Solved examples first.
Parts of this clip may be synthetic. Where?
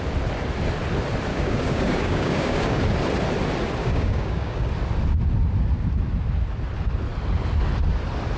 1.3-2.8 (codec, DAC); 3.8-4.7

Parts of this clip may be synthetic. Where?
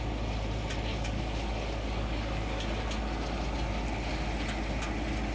0.9-2.7 (codec, DAC)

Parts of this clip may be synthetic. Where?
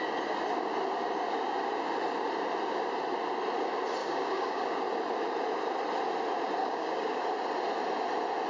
4.0-4.8 (codec, DAC); 6.6-7.2